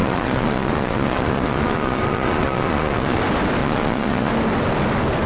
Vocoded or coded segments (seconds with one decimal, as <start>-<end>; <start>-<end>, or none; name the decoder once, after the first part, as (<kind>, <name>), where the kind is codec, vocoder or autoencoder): 0.0-3.2 (vocoder, Vocos); 3.6-4.3